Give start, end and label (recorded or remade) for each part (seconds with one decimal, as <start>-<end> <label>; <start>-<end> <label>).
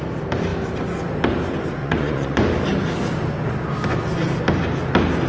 0.0-1.8 recorded; 1.8-2.4 remade; 2.4-5.3 recorded